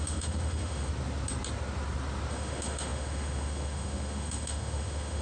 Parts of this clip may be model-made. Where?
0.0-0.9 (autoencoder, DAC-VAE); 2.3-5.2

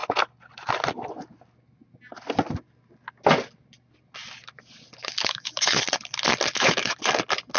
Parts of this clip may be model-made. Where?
5.0-5.8 (autoencoder, DAC-VAE); 6.5-7.0

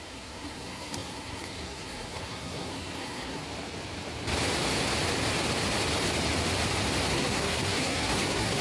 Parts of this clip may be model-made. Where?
0.0-3.4 (codec, SNAC); 7.1-8.6

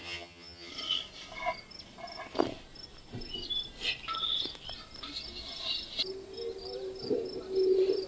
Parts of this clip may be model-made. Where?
0.0-0.7 (vocoder, HiFi-GAN)

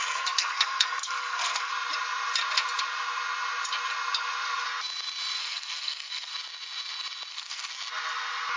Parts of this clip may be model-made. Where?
0.0-1.7 (codec, SNAC); 5.4-6.3; 7.3-7.7

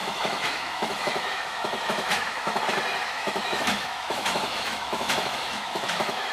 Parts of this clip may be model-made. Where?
0.0-2.6 (autoencoder, DAC-VAE); 3.0-6.3